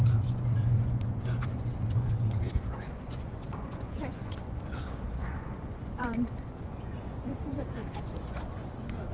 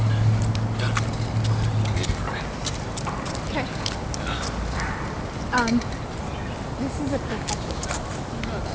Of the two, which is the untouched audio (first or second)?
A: second